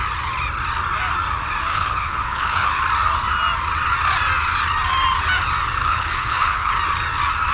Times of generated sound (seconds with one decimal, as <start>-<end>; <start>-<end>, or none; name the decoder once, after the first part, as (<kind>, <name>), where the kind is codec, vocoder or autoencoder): 1.7-2.8 (codec, HILCodec); 5.8-6.7